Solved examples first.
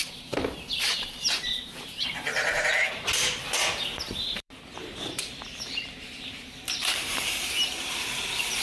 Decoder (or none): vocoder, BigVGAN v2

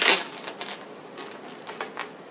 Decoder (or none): none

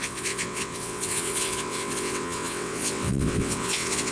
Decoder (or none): vocoder, WaveNeXt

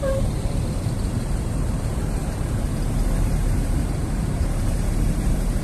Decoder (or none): vocoder, BigVGAN v2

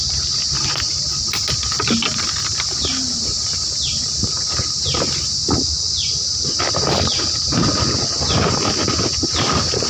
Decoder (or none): none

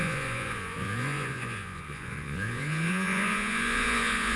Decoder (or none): vocoder, Vocos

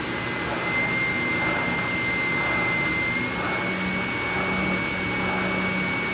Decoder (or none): none